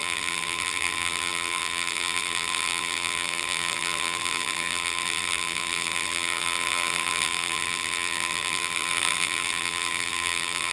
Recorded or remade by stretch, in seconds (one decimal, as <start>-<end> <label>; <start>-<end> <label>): 0.0-10.7 remade